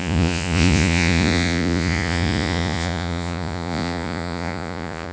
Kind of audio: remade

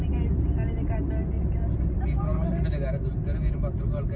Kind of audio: recorded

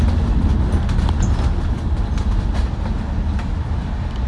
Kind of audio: recorded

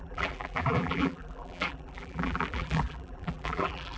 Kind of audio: remade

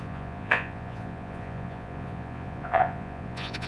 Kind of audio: remade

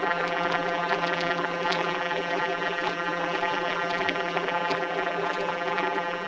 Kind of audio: remade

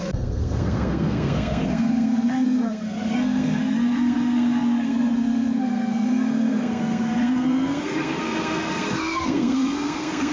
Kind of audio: remade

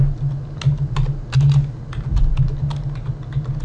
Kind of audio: recorded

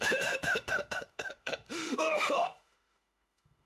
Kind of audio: remade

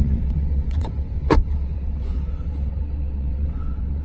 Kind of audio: remade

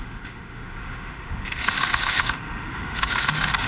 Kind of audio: remade